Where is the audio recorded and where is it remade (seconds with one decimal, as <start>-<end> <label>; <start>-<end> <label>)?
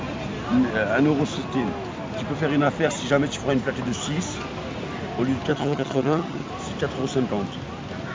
0.0-5.5 recorded; 5.5-6.5 remade; 6.5-8.1 recorded